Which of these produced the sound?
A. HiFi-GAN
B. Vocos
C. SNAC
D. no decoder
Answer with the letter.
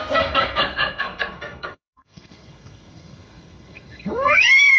C